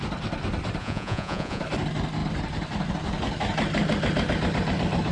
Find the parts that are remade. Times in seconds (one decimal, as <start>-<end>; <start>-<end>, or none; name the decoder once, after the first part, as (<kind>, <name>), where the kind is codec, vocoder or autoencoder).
0.8-1.6 (vocoder, Vocos)